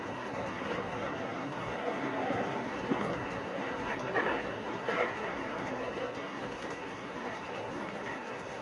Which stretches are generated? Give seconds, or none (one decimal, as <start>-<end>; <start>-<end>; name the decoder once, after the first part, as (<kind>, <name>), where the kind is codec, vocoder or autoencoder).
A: 0.0-8.6 (codec, SNAC)